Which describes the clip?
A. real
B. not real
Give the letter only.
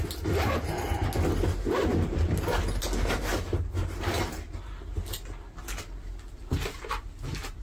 A